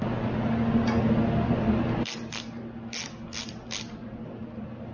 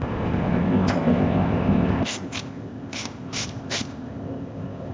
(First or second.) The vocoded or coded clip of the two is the second